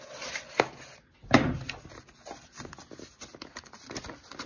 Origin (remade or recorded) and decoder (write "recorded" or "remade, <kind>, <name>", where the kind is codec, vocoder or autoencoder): recorded